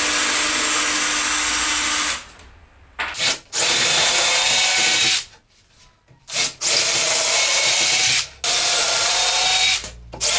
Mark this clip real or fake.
real